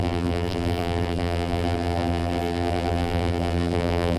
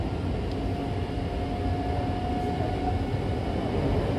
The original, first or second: second